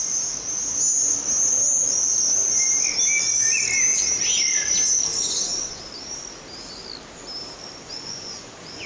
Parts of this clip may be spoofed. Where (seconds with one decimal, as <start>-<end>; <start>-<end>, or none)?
5.1-5.8; 7.9-8.9